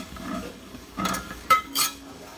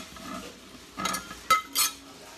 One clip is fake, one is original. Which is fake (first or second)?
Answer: first